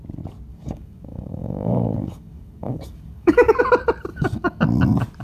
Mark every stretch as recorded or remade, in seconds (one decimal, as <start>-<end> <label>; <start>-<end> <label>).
0.0-0.5 recorded; 0.5-3.6 remade; 3.6-4.1 recorded; 4.1-4.6 remade; 4.6-5.2 recorded